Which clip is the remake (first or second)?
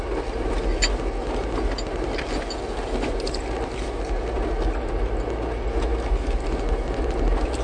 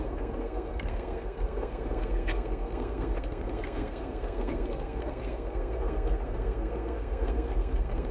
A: second